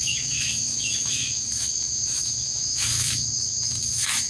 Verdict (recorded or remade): remade